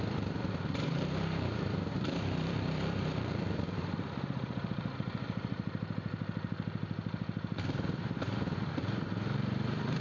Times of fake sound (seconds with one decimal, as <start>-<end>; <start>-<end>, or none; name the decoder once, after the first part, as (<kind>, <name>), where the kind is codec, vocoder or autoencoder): 0.0-10.0 (vocoder, BigVGAN v2)